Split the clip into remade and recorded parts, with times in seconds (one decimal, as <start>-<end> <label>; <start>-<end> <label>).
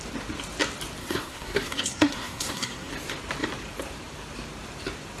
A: 0.0-1.0 recorded; 1.0-2.9 remade; 2.9-5.2 recorded